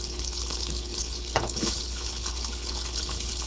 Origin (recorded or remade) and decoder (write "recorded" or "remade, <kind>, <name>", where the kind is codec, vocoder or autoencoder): remade, codec, HILCodec